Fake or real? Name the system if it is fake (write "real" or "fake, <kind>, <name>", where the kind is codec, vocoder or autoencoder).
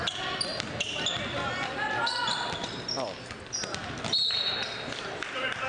real